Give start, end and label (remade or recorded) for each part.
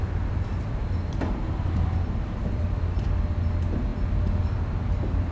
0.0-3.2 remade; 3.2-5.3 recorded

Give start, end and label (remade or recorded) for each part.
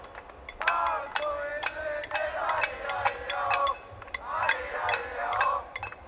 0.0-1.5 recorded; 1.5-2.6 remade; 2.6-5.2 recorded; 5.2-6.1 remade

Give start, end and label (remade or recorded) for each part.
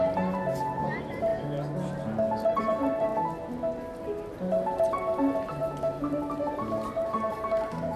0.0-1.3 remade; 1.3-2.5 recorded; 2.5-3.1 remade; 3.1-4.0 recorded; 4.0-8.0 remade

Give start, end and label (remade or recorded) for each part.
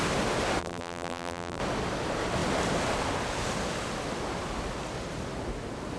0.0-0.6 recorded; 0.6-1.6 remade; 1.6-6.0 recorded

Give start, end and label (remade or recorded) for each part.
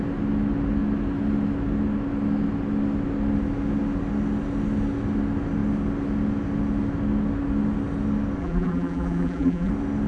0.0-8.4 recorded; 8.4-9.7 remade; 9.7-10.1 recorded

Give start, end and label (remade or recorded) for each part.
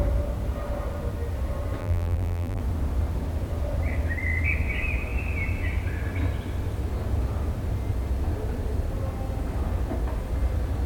0.0-1.8 recorded; 1.8-2.6 remade; 2.6-10.9 recorded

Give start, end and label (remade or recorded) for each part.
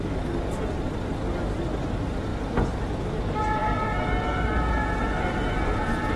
0.0-6.2 recorded